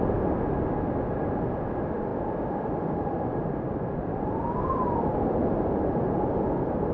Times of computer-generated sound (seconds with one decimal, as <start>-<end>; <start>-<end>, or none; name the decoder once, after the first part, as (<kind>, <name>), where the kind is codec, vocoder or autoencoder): 2.1-5.6 (vocoder, BigVGAN v2)